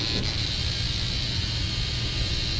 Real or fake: real